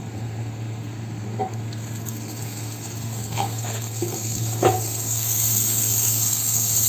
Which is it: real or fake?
fake